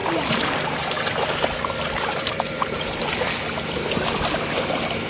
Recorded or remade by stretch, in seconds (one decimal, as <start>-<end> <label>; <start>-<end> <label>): 0.0-3.1 remade; 3.1-5.1 recorded